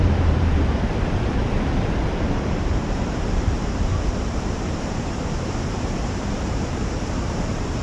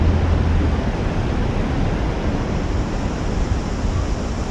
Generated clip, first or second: first